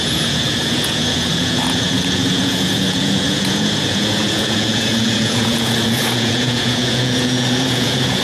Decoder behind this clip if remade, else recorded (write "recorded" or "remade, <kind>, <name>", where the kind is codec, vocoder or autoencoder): remade, vocoder, Vocos